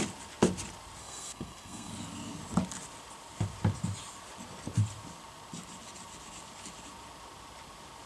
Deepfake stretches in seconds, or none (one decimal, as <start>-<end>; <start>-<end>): 1.0-1.9